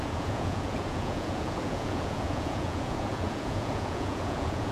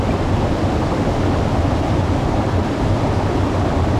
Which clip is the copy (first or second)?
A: first